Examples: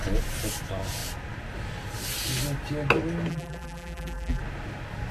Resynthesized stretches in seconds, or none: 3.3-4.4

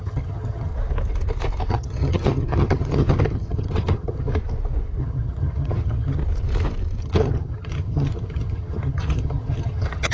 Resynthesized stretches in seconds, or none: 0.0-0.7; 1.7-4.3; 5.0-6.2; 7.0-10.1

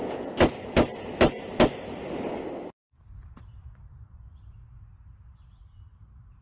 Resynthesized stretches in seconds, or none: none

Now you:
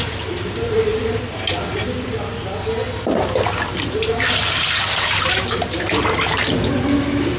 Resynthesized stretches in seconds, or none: 0.0-0.9; 3.7-6.4

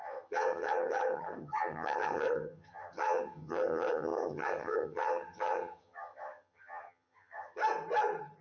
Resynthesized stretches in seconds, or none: 0.0-7.6

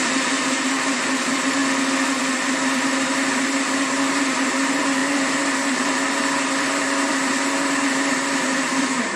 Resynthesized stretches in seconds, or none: 0.0-1.6; 2.3-9.2

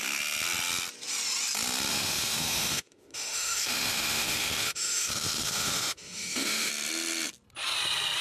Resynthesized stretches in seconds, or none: 1.9-6.7

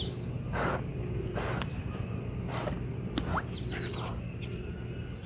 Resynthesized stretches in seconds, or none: none